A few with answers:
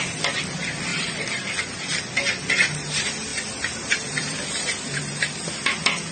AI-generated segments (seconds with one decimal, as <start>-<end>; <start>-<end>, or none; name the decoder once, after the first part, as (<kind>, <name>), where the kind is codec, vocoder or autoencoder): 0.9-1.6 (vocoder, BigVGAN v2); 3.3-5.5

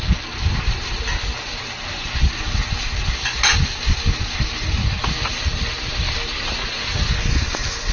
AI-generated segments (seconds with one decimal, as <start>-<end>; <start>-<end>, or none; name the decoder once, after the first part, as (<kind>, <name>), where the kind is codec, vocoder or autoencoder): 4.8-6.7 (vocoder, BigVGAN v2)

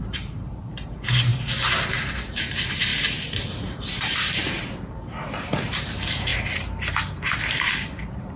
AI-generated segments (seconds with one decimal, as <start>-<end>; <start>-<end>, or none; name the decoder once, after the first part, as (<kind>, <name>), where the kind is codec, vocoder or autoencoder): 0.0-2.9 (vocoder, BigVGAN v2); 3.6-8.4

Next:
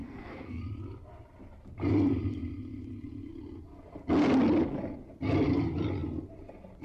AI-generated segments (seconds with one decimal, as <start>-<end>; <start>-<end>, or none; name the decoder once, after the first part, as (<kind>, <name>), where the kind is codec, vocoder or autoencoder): 0.0-0.6 (codec, SNAC)

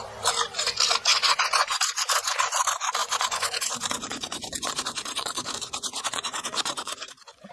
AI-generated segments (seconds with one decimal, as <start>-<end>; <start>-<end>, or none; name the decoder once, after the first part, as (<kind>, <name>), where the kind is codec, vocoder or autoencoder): 1.1-1.8 (vocoder, Vocos); 3.0-7.5